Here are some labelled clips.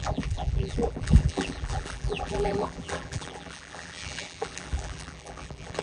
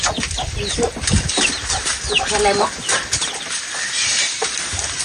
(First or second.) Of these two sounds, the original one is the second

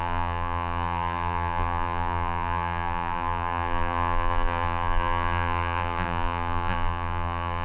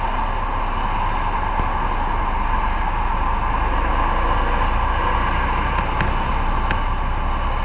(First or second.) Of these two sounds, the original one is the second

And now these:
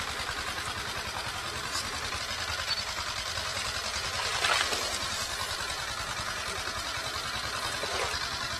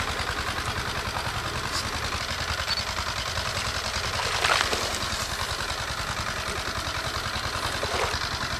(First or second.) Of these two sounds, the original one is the second